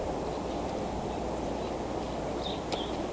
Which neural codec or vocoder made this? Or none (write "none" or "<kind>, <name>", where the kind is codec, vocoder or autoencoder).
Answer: vocoder, BigVGAN v2